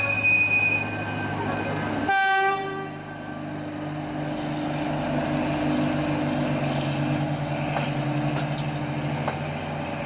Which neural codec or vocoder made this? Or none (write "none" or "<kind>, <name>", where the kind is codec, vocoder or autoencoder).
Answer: none